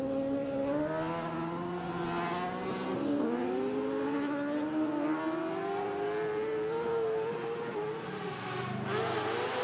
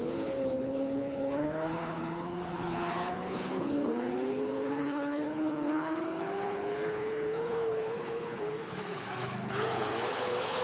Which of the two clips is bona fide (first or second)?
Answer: first